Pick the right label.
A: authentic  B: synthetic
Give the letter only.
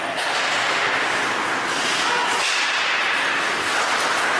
A